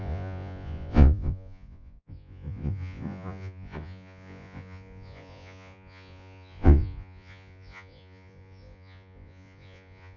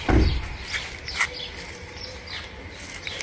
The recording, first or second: second